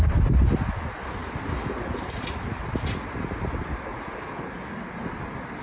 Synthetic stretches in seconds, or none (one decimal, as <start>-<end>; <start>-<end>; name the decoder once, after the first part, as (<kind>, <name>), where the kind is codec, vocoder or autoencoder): none